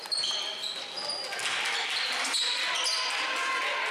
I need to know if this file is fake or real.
real